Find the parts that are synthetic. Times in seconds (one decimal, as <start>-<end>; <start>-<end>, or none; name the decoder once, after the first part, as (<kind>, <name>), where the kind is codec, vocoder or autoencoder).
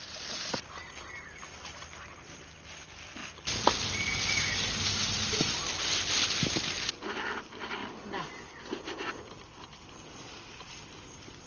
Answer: none